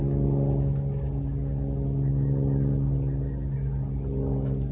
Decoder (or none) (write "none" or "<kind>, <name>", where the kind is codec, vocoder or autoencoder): none